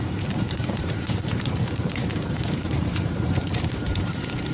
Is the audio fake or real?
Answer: fake